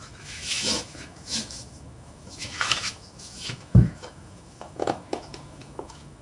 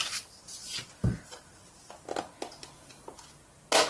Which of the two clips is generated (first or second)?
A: first